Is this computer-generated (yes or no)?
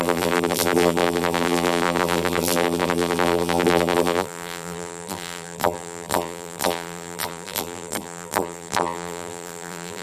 yes